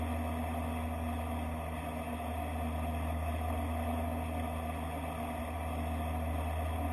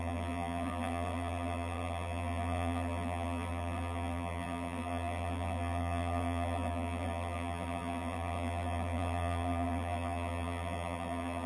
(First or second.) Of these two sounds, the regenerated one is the second